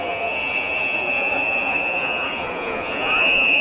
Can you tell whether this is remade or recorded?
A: remade